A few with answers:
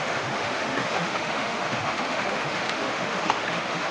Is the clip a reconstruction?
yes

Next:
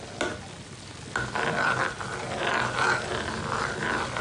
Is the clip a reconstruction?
no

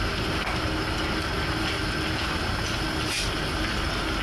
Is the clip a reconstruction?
no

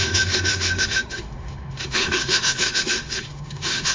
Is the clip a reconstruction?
yes